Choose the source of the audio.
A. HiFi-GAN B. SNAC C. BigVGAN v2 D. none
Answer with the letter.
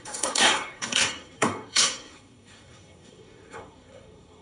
B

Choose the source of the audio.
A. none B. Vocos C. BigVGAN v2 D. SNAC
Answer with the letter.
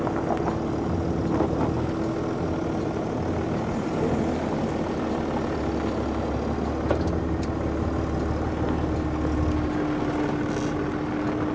A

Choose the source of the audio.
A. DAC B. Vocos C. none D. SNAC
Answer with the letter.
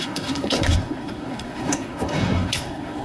D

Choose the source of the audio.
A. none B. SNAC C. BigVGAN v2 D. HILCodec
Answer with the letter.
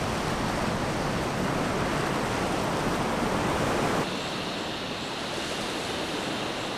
A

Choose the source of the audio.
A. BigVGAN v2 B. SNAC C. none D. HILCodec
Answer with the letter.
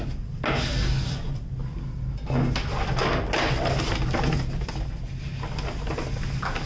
C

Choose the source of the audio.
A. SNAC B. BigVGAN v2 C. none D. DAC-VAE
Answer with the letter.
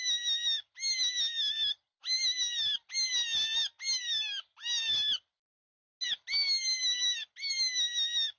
C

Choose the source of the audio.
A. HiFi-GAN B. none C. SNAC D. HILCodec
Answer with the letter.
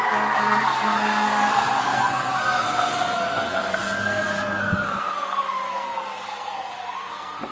C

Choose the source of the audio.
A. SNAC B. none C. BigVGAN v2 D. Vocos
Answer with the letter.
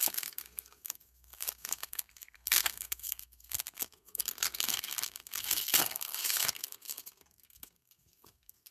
A